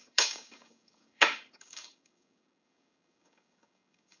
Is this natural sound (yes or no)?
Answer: no